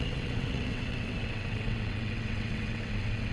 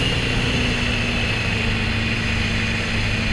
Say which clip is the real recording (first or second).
second